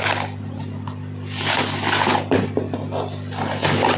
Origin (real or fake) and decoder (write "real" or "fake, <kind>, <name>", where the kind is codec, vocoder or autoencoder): real